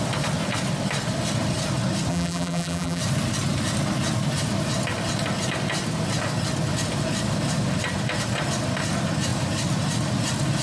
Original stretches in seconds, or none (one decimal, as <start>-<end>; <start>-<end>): 0.0-2.1; 3.0-10.6